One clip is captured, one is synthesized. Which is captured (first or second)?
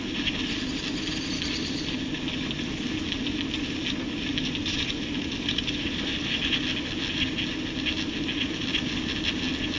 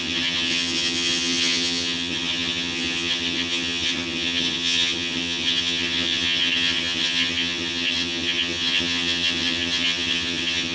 first